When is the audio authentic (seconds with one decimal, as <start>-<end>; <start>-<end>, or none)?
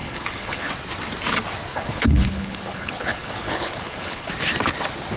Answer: 0.7-1.7; 4.3-5.2